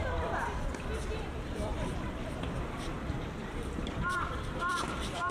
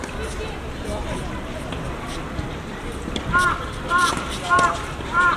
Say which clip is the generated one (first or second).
first